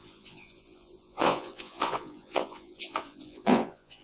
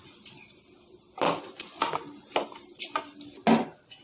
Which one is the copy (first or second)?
first